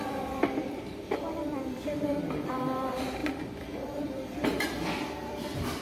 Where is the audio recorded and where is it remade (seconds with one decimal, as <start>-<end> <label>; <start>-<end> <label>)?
0.0-5.8 remade